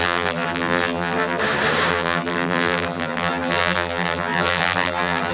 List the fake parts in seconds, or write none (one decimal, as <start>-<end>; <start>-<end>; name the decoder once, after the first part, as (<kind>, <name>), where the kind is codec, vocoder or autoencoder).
0.0-1.4 (vocoder, BigVGAN v2); 1.9-5.3